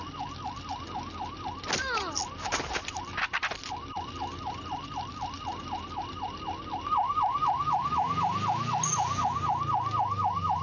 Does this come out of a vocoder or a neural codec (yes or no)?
no